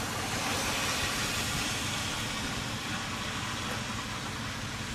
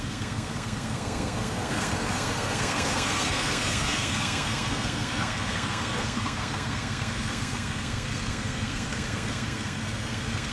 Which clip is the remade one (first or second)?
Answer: second